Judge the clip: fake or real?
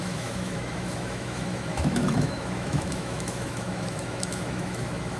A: fake